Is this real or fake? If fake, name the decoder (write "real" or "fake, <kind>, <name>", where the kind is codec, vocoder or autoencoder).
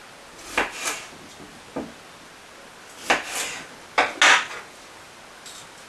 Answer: real